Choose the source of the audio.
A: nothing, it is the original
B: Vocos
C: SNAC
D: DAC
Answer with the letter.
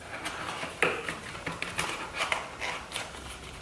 A